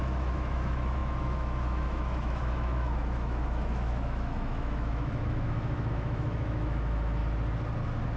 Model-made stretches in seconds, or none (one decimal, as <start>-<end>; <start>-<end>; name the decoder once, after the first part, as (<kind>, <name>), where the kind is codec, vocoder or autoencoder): 0.0-7.2 (autoencoder, DAC-VAE)

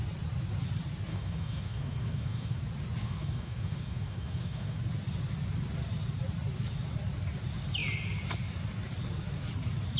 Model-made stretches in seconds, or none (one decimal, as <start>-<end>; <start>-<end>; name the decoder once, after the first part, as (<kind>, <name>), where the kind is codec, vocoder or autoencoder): 1.1-2.6 (autoencoder, DAC-VAE); 3.0-4.8

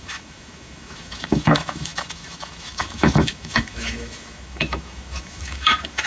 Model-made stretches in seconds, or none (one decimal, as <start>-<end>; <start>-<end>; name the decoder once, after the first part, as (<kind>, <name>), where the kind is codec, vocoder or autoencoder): 0.0-6.1 (autoencoder, DAC-VAE)

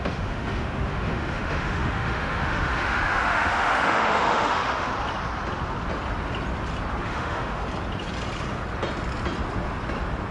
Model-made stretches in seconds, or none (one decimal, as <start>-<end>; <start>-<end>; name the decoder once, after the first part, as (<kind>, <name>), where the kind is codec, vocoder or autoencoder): 0.0-4.9 (autoencoder, DAC-VAE); 7.0-7.6

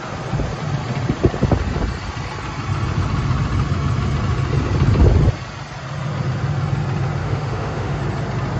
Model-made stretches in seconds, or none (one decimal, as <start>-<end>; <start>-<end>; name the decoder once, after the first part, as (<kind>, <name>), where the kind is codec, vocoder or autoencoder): 7.2-8.0 (autoencoder, DAC-VAE)